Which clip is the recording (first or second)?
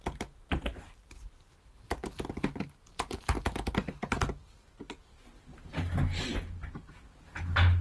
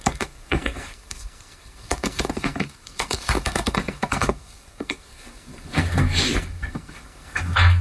first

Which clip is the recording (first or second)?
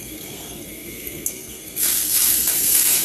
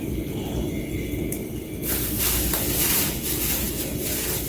second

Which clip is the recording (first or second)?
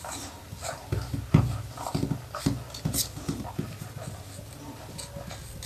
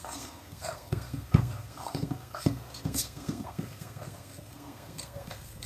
first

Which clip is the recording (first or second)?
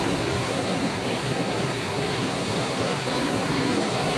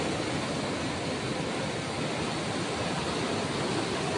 second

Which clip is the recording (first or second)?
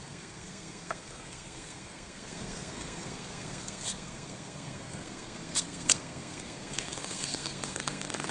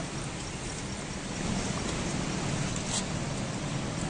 second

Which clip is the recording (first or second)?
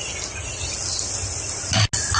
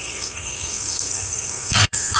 first